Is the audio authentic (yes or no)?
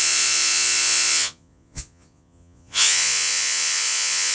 no